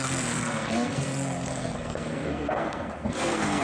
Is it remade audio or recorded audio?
remade